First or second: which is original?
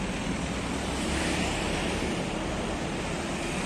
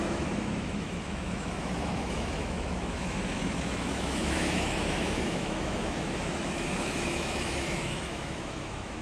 first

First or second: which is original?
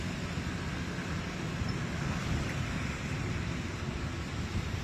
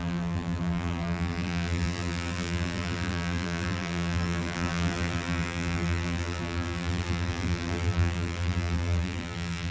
first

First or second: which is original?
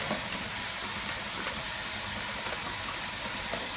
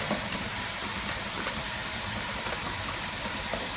first